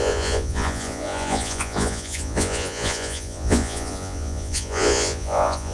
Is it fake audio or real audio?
fake